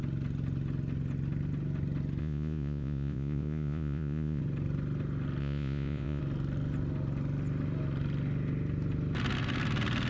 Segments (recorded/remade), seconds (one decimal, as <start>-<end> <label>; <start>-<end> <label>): 0.0-2.2 recorded; 2.2-4.4 remade; 4.4-5.4 recorded; 5.4-6.2 remade; 6.2-10.1 recorded